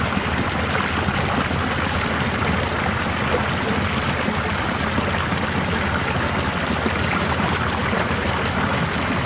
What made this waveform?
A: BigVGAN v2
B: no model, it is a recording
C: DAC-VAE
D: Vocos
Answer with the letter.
B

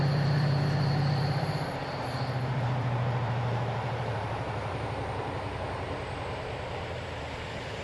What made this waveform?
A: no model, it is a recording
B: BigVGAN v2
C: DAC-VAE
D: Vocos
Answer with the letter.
B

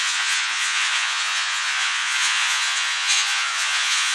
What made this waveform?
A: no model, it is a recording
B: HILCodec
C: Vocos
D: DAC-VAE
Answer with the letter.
C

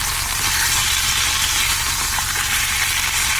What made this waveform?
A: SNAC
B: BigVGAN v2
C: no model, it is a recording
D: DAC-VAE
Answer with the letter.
B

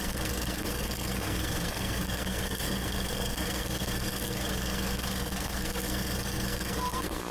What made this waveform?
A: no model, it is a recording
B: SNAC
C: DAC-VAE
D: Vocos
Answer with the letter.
B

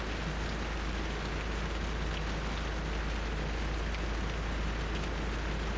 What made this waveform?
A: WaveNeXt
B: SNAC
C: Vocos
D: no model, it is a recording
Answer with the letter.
D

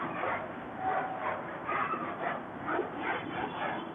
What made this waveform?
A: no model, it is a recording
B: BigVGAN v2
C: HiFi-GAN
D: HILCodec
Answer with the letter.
B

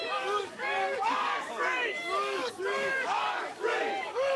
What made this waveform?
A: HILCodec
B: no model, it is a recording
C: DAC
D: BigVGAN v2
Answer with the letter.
C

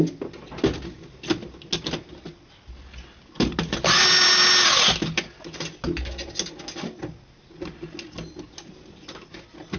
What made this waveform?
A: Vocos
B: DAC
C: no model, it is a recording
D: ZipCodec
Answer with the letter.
C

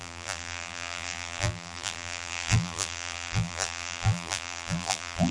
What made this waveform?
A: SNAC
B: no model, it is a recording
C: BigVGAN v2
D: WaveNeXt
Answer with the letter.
C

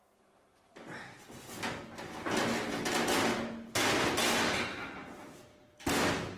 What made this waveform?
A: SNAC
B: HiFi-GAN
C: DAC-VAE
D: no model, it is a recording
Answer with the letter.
D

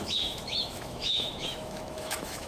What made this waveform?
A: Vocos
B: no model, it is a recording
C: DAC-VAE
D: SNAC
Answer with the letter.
C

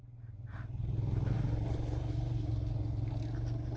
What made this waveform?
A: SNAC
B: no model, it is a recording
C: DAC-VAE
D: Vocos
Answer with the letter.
B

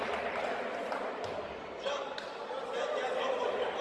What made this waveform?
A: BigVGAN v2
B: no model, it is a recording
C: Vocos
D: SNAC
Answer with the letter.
B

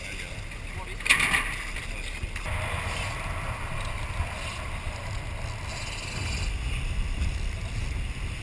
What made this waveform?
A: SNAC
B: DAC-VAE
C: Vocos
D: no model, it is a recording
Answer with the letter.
D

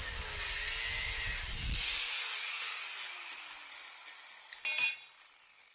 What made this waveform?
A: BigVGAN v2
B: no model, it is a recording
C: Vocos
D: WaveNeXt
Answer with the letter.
B